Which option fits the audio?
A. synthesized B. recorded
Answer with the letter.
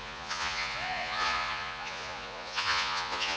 A